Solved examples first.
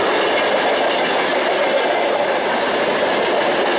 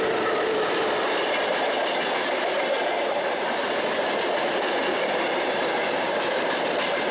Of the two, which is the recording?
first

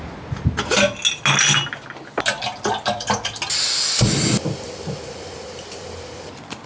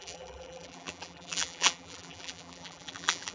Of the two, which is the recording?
first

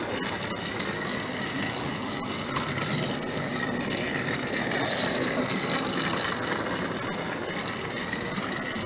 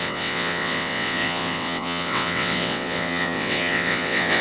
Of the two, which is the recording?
first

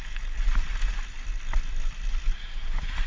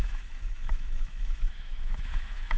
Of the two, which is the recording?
first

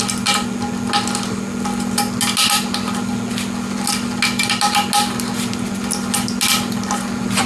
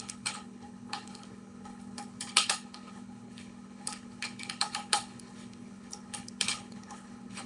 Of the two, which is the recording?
first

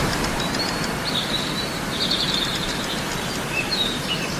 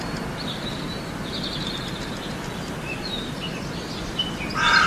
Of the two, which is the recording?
second